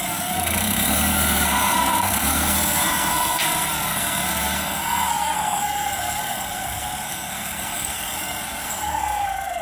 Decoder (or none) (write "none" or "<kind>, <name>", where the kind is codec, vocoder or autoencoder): codec, SNAC